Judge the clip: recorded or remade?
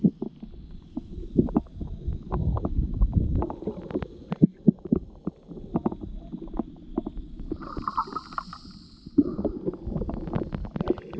recorded